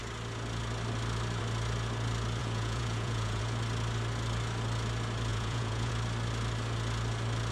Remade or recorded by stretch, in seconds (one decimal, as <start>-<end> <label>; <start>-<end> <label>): 0.0-2.4 recorded; 2.4-3.4 remade; 3.4-5.3 recorded; 5.3-5.9 remade; 5.9-7.5 recorded